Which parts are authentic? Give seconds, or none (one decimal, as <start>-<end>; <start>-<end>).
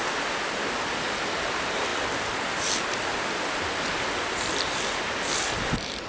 0.0-6.1